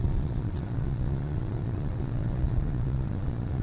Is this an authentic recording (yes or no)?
no